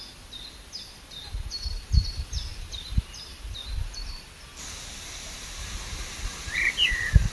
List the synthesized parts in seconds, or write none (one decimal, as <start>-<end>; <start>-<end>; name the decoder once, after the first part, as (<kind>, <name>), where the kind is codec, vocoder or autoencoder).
2.5-4.3 (vocoder, BigVGAN v2); 5.6-7.3